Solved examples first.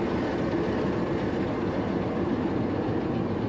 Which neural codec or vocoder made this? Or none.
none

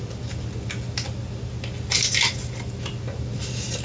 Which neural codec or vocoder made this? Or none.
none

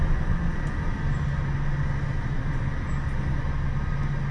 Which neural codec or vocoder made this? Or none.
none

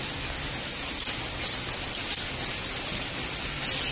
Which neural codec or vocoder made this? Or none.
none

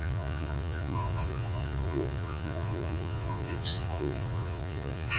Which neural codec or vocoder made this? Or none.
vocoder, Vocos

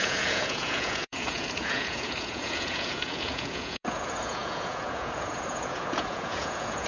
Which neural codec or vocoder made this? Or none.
vocoder, Vocos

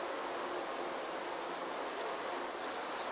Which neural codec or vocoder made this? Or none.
none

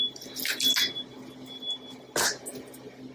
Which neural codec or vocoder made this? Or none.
none